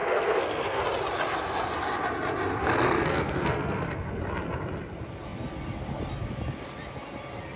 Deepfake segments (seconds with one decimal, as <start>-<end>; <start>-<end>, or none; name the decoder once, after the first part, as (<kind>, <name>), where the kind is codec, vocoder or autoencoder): 0.0-0.8 (codec, SNAC); 2.6-4.2